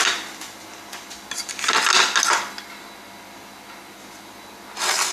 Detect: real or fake real